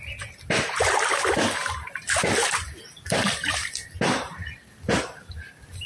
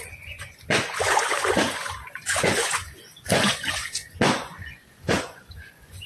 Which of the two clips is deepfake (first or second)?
second